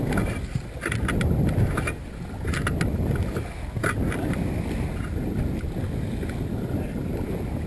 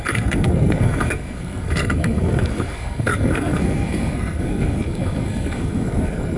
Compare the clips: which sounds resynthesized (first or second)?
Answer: second